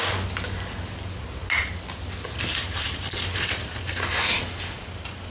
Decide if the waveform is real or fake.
real